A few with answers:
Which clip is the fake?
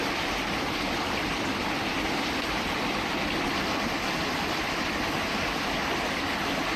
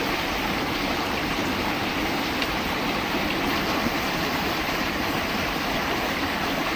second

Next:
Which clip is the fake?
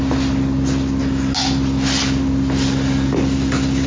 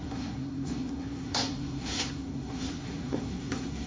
second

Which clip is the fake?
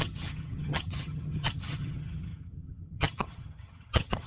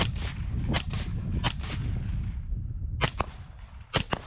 first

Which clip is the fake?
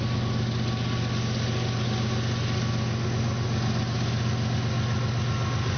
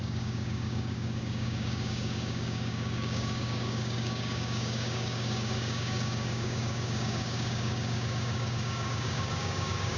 second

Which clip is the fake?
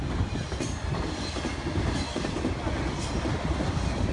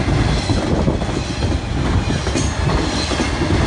first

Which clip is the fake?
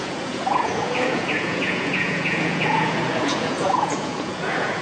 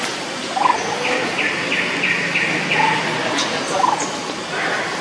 first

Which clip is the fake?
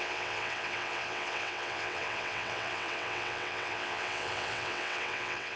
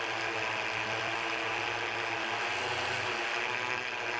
first